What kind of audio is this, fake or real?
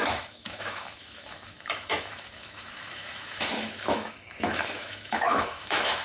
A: fake